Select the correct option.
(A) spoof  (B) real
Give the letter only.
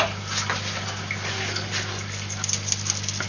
B